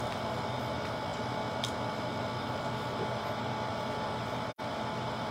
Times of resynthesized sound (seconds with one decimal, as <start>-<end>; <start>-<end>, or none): none